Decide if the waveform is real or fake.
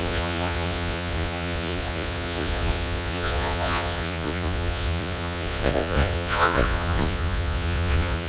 fake